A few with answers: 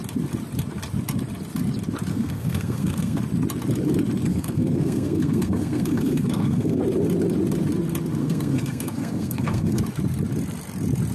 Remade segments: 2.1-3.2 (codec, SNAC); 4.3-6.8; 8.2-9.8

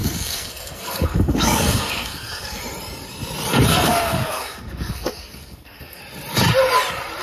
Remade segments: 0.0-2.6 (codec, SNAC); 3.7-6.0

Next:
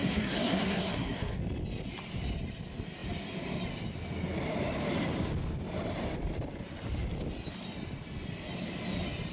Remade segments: 0.0-1.4 (codec, SNAC)